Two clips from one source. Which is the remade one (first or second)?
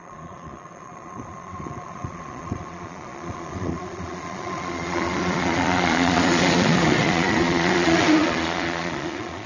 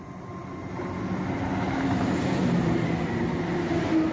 first